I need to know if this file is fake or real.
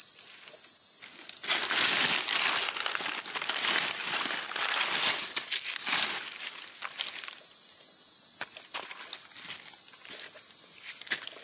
real